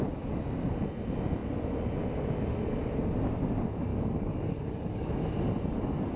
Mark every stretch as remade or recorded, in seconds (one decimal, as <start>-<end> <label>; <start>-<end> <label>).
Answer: 0.0-3.9 recorded; 3.9-5.2 remade; 5.2-6.2 recorded